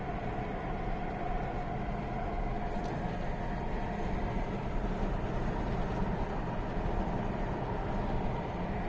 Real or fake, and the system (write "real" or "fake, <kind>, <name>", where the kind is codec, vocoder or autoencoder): real